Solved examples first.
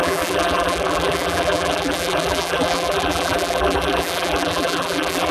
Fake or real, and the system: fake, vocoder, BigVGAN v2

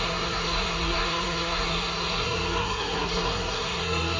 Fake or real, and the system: fake, codec, SNAC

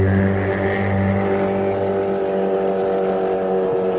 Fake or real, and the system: real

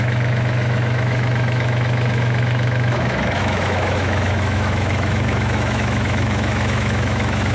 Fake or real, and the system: fake, autoencoder, DAC-VAE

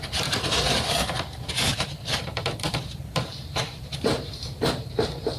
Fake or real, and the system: fake, vocoder, BigVGAN v2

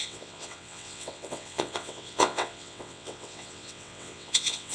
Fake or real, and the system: fake, vocoder, WaveNeXt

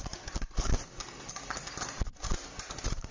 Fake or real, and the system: real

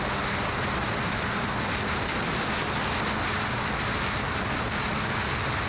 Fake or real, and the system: real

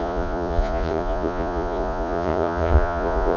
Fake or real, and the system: fake, vocoder, Vocos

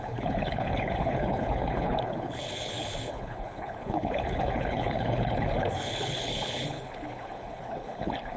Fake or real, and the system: fake, codec, HILCodec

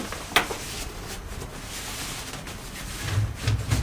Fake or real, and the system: real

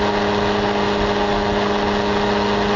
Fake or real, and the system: real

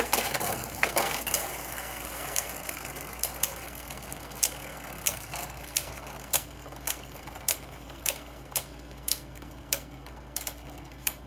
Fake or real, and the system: fake, codec, SNAC